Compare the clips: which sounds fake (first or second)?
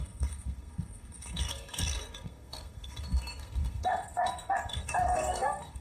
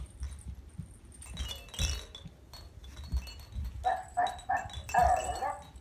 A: first